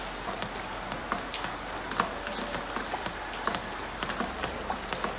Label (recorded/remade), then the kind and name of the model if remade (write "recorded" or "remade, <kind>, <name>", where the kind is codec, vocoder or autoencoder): recorded